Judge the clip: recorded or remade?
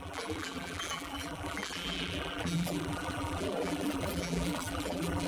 remade